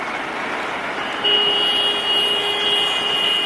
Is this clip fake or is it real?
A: real